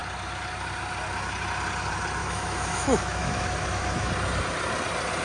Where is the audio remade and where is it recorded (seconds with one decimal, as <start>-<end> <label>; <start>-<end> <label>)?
0.0-2.2 recorded; 2.2-4.1 remade; 4.1-5.2 recorded

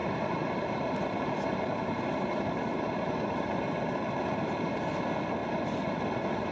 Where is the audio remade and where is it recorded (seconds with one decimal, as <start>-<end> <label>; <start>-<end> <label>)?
0.0-3.8 remade; 3.8-6.5 recorded

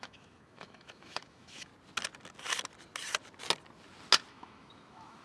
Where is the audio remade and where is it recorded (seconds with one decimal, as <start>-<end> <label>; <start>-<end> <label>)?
0.0-1.7 remade; 1.7-4.3 recorded; 4.3-5.2 remade

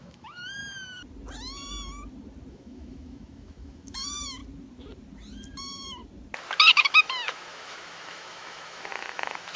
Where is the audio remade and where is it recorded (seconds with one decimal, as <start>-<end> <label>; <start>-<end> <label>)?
0.0-0.6 remade; 0.6-2.5 recorded; 2.5-4.4 remade; 4.4-5.6 recorded; 5.6-6.0 remade; 6.0-6.7 recorded; 6.7-9.6 remade